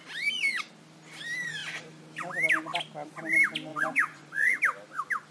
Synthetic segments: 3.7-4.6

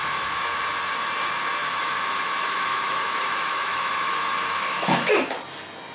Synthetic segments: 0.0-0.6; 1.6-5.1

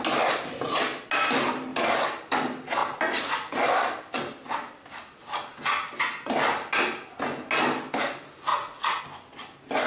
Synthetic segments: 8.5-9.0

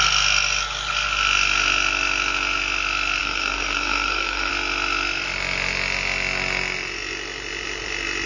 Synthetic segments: 3.2-4.5

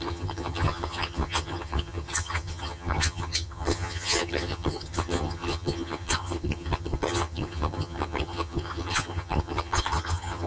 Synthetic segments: 0.0-10.5